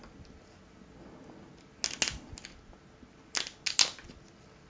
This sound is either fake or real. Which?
real